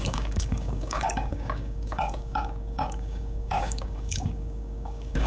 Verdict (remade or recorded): remade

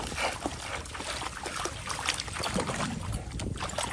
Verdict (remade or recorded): recorded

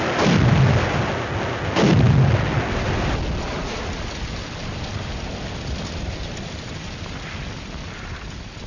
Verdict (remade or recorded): recorded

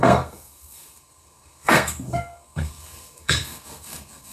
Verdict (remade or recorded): remade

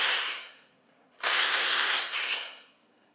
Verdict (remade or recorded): remade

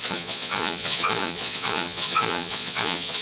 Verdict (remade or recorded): remade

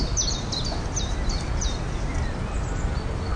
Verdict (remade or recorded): recorded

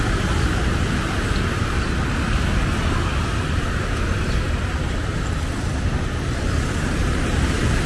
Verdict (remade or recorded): recorded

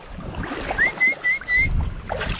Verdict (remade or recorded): recorded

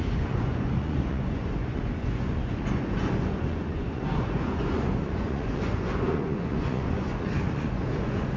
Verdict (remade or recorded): remade